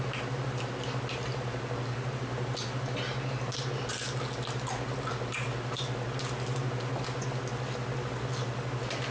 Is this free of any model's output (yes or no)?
yes